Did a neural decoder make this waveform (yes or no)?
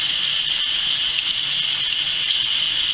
no